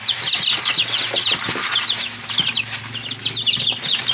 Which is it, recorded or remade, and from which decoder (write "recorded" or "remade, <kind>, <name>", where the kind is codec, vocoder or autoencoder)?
recorded